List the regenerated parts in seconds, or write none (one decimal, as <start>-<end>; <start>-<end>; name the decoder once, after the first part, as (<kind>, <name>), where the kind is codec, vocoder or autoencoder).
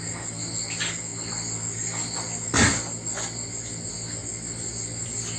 none